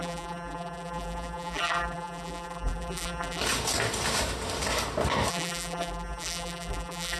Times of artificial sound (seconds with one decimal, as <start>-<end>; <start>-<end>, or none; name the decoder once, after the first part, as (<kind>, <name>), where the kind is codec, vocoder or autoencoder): 0.0-3.4 (vocoder, BigVGAN v2); 5.3-7.2

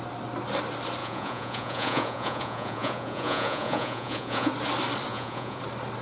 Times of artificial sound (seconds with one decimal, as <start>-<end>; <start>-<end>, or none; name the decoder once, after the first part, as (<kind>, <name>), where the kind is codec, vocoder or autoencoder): 1.0-4.5 (vocoder, Vocos); 5.1-5.6

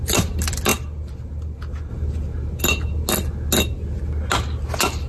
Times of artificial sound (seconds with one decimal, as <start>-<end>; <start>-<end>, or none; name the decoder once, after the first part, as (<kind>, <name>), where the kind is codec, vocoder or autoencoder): none

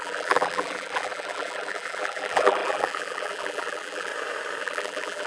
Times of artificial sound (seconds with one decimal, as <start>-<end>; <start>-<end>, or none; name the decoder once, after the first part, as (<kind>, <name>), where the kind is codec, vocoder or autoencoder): 0.0-4.1 (vocoder, BigVGAN v2); 4.6-5.3

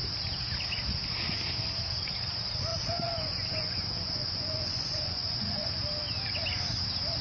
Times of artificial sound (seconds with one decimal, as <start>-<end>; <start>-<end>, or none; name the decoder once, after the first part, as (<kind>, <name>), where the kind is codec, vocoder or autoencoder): 2.7-5.7 (vocoder, Vocos)

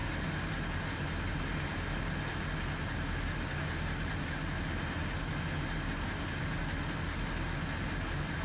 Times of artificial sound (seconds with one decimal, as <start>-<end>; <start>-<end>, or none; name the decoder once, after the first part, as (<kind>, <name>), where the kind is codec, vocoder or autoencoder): none